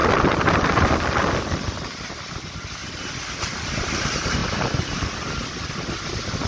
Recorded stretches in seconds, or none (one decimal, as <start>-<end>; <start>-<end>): 0.0-4.4; 5.1-6.5